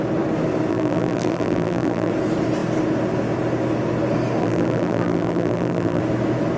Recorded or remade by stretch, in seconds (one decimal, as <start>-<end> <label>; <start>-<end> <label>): 0.0-0.7 recorded; 0.7-2.1 remade; 2.1-4.4 recorded; 4.4-6.0 remade; 6.0-6.6 recorded